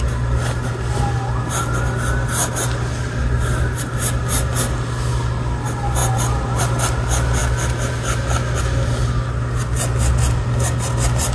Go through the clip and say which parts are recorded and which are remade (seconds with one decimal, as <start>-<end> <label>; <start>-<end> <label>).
0.0-11.3 recorded